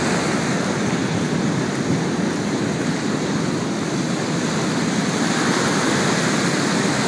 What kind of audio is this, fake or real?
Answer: real